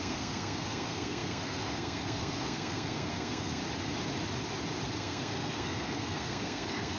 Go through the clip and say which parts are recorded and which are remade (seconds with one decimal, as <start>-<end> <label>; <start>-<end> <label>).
0.0-3.6 remade; 3.6-5.0 recorded; 5.0-7.0 remade